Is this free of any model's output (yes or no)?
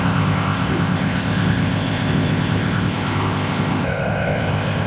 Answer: no